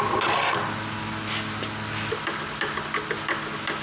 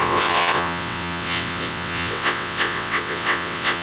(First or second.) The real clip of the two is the first